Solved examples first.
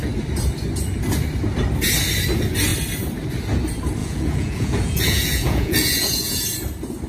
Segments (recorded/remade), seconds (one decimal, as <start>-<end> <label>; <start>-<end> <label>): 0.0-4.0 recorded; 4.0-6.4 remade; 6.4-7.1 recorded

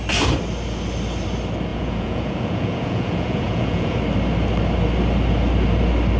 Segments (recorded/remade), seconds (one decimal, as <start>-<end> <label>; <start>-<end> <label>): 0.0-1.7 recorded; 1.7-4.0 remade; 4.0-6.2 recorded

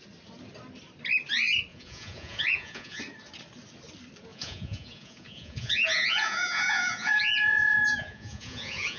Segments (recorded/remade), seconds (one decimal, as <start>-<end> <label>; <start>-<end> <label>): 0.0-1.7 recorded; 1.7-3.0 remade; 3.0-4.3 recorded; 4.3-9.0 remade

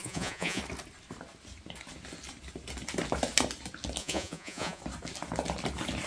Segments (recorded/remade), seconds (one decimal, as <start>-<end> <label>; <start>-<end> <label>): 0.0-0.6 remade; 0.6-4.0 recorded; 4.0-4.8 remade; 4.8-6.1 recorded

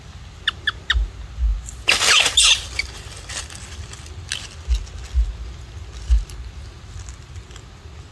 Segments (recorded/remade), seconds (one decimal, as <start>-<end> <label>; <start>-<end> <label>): 0.0-8.1 recorded

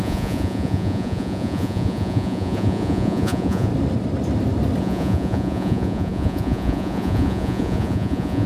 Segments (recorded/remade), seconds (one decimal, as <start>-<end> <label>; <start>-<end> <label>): 0.0-3.7 remade; 3.7-4.8 recorded; 4.8-8.5 remade

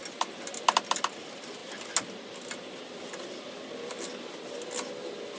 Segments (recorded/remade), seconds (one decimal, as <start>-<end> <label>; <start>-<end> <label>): 0.0-5.4 recorded

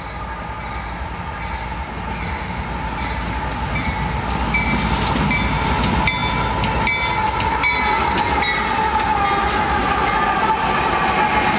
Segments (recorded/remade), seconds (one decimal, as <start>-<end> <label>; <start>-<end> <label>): 0.0-11.6 recorded